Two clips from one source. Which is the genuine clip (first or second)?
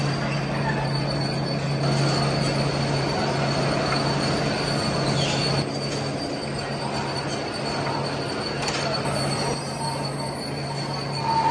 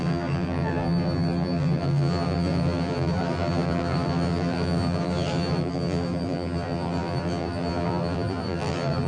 first